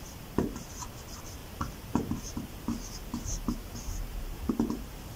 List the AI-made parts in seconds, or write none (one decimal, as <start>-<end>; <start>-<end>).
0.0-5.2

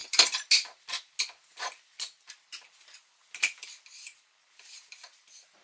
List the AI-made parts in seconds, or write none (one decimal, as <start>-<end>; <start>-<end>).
none

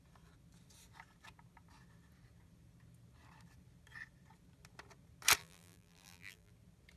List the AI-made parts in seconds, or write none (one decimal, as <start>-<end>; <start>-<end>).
5.4-6.5

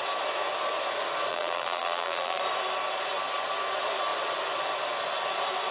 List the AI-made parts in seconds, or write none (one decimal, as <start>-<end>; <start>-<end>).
1.3-2.4